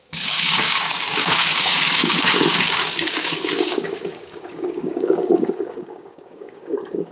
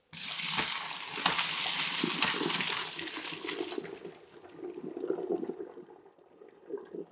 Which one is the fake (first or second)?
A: first